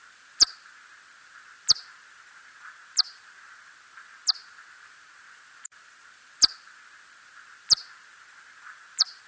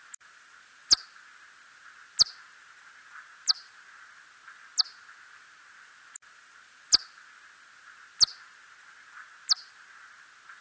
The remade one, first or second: first